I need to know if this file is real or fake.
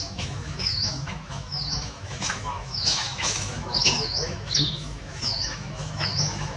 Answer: fake